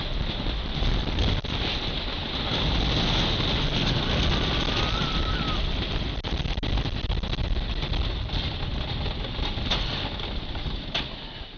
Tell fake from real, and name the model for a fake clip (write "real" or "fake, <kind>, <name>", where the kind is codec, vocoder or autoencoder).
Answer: real